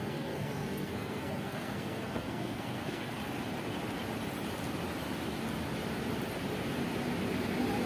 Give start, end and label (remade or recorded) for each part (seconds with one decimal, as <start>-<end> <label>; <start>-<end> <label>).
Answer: 0.0-3.2 remade; 3.2-7.9 recorded